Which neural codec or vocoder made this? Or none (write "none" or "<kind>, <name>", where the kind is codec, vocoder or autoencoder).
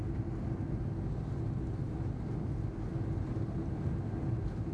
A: none